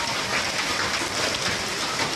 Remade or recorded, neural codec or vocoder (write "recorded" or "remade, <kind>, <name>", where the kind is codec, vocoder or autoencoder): recorded